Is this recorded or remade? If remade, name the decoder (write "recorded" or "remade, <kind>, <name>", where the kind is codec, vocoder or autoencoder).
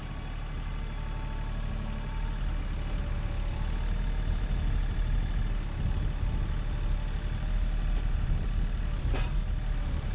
recorded